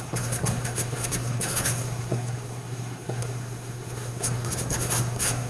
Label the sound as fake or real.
fake